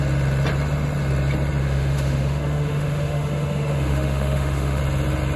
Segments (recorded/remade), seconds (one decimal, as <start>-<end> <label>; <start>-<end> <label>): 0.0-1.6 recorded; 1.6-4.8 remade; 4.8-5.4 recorded